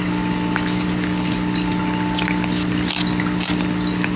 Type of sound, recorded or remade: recorded